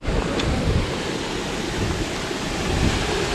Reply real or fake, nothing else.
real